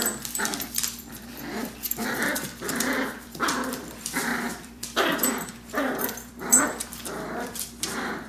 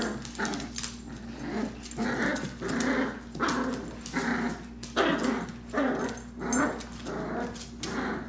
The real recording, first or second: second